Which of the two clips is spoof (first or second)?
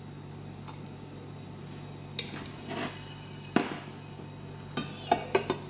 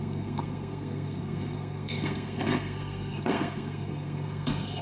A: second